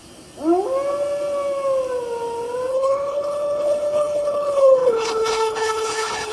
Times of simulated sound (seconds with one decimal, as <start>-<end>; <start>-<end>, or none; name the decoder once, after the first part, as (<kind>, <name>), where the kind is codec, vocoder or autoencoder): 2.7-6.3 (codec, HILCodec)